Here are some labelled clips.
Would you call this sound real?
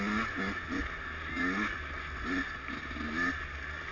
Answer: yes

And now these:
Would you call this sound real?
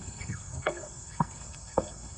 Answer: no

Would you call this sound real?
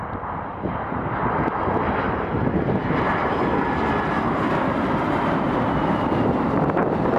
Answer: yes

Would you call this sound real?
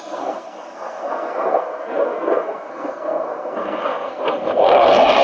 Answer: no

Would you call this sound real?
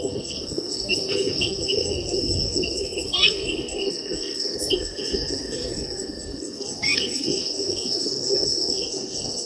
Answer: no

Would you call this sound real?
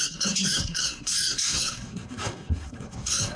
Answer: no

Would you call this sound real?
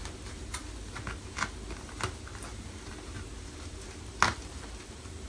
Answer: yes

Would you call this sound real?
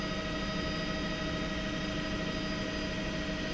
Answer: yes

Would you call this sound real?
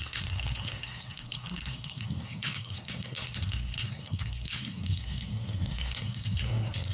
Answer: no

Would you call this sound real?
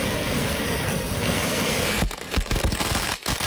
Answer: no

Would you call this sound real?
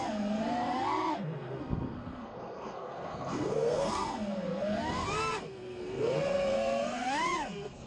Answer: no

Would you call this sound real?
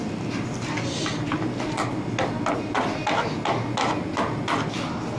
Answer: yes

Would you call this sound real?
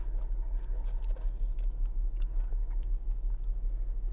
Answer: yes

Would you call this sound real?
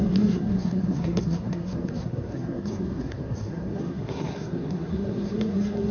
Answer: no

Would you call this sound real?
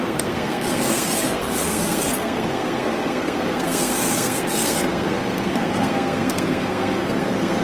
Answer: no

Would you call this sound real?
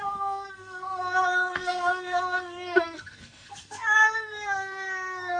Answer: no